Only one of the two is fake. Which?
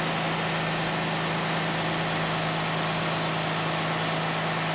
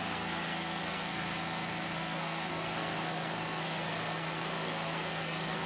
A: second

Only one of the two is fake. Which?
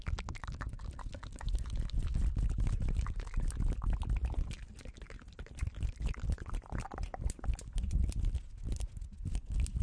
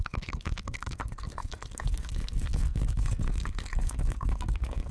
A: second